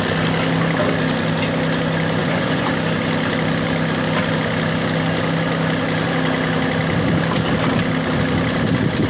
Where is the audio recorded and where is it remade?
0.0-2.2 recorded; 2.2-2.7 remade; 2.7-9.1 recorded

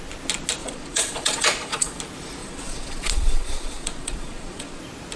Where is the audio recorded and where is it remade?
0.0-0.6 recorded; 0.6-2.0 remade; 2.0-2.4 recorded; 2.4-4.8 remade; 4.8-5.2 recorded

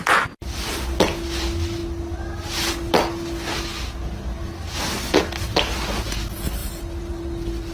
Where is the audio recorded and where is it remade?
0.0-7.7 recorded

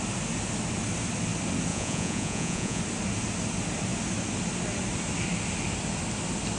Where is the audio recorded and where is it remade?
0.0-1.7 recorded; 1.7-2.8 remade; 2.8-6.6 recorded